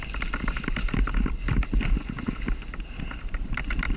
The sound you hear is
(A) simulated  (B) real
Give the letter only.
B